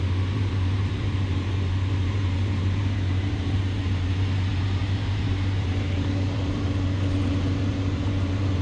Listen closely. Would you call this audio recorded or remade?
remade